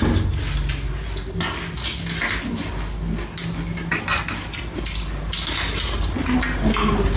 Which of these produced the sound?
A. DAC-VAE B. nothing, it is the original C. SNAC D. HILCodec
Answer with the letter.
B